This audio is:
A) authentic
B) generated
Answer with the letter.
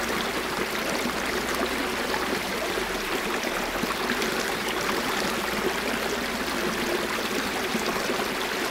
A